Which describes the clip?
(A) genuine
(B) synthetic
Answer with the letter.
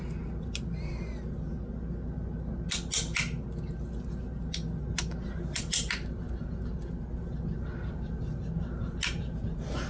A